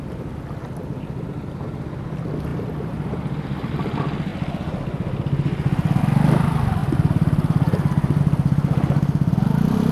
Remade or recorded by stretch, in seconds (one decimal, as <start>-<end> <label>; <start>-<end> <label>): 0.0-2.5 recorded; 2.5-3.7 remade; 3.7-6.8 recorded; 6.8-8.2 remade; 8.2-9.9 recorded